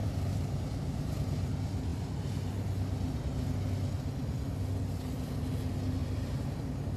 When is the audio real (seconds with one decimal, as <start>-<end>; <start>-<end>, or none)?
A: 1.5-6.0; 6.6-7.0